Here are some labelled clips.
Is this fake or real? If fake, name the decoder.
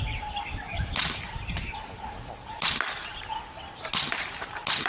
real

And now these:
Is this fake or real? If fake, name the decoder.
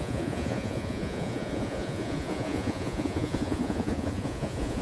fake, vocoder, Vocos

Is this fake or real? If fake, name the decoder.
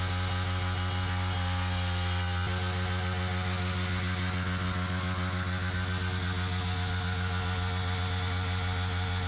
real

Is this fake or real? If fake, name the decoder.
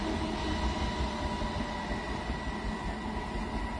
real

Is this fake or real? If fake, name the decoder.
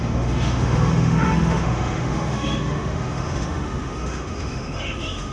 fake, autoencoder, DAC-VAE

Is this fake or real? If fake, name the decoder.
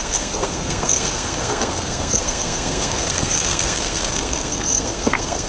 fake, codec, SNAC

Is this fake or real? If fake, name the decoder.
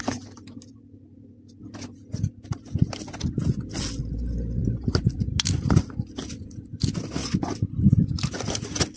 real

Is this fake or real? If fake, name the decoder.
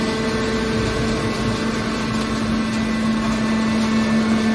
real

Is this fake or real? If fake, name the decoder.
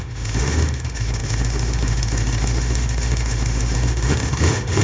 fake, autoencoder, DAC-VAE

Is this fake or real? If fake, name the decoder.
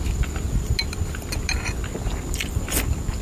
real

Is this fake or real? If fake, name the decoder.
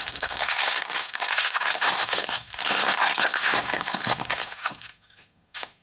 fake, codec, SNAC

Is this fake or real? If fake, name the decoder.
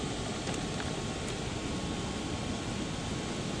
real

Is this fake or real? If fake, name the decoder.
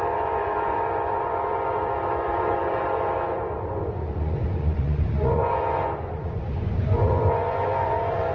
fake, vocoder, Vocos